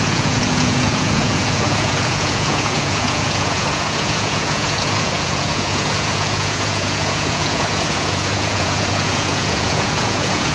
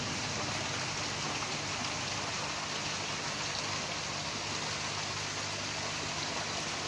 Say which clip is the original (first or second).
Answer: second